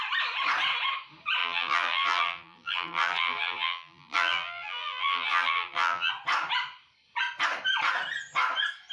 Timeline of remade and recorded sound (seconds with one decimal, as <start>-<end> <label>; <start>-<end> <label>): 0.0-1.4 recorded; 1.4-6.1 remade; 6.1-8.9 recorded